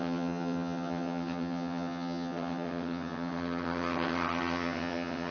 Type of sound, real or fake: fake